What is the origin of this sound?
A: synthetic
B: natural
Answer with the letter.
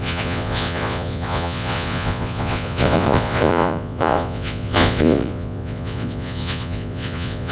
A